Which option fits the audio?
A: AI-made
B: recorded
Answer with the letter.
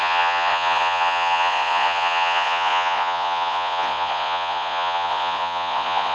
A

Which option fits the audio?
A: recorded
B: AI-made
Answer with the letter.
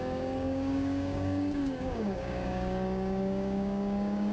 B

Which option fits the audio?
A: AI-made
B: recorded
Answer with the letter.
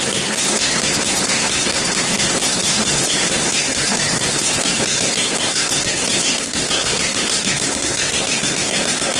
A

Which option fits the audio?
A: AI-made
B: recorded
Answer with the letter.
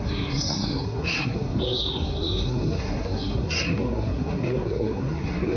A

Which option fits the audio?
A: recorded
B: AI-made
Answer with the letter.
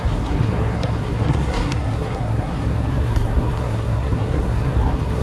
B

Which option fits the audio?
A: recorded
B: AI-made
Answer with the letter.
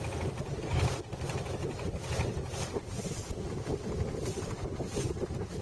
A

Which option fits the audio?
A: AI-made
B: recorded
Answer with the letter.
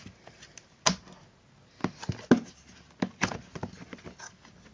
B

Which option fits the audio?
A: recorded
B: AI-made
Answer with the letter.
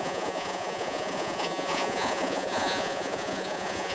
B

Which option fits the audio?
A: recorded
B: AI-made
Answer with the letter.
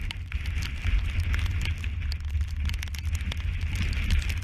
A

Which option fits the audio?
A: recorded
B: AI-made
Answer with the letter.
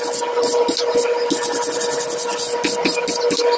A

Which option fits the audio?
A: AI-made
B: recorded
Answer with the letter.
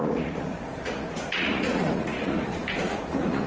A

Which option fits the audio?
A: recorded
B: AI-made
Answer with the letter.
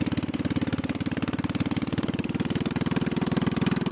A